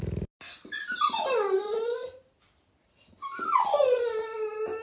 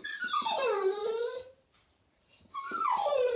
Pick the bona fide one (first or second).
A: first